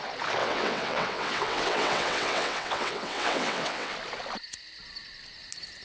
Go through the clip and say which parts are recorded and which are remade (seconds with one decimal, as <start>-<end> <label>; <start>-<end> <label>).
0.0-0.4 recorded; 0.4-3.9 remade; 3.9-5.8 recorded